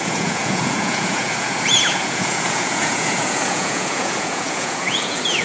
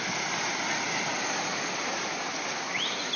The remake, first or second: first